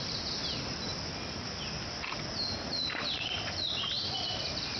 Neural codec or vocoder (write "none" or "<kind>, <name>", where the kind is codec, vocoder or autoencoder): none